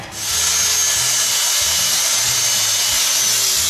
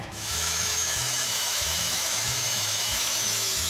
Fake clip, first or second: second